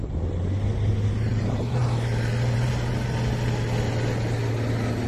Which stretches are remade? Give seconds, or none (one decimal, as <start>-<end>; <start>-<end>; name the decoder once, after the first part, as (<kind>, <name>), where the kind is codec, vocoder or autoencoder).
1.3-2.7 (vocoder, BigVGAN v2)